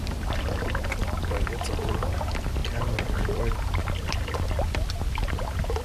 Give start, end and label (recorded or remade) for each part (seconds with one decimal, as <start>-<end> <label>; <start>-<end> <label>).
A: 0.0-5.8 recorded